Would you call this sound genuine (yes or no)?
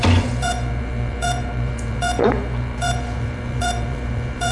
no